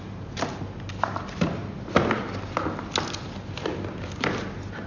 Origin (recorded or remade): recorded